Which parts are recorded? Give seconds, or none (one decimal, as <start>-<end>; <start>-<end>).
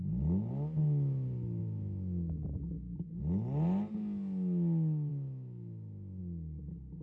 0.0-1.6; 3.2-5.1; 6.2-7.0